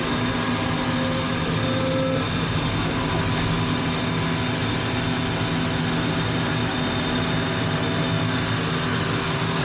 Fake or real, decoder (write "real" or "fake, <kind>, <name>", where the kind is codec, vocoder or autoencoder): real